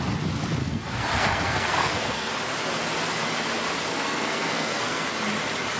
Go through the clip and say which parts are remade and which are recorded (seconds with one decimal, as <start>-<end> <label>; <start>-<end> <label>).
0.0-0.6 recorded; 0.6-2.3 remade; 2.3-3.9 recorded; 3.9-5.1 remade; 5.1-5.8 recorded